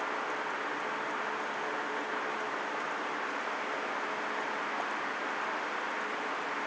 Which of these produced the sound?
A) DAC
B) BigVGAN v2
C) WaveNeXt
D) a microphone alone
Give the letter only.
D